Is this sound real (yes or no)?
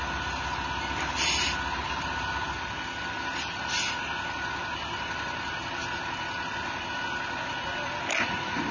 yes